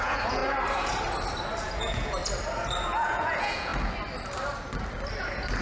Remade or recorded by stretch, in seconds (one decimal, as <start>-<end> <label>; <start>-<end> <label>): 0.0-0.4 remade; 0.4-1.6 recorded; 1.6-2.2 remade; 2.2-2.8 recorded; 2.8-3.7 remade; 3.7-5.6 recorded